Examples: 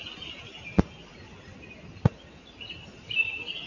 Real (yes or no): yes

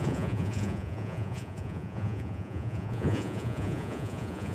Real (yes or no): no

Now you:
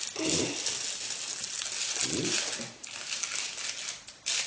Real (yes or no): yes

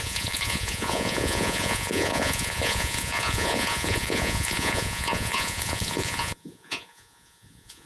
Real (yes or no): no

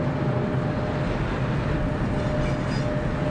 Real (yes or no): yes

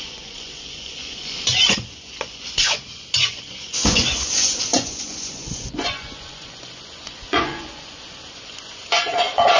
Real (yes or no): no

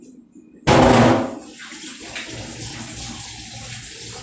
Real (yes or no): yes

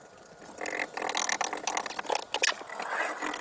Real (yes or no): yes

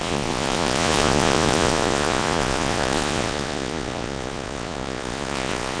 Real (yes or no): no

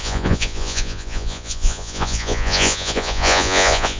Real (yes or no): no